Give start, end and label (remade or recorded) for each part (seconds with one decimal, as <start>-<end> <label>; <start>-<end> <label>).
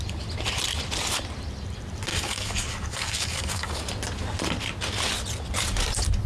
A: 0.0-2.1 recorded; 2.1-3.8 remade; 3.8-6.3 recorded